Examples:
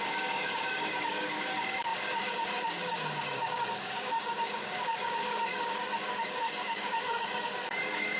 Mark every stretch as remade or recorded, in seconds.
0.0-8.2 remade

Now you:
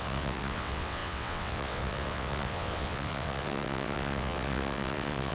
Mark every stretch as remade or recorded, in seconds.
0.0-5.3 remade

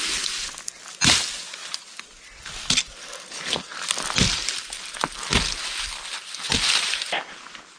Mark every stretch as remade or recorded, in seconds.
0.0-7.8 recorded